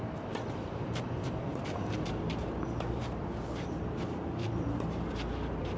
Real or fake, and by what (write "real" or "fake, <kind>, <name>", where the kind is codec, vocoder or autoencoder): fake, vocoder, BigVGAN v2